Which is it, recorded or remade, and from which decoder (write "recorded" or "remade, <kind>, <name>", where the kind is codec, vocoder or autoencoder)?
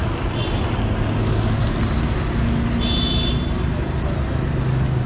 recorded